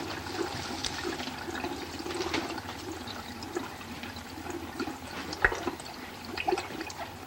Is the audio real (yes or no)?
yes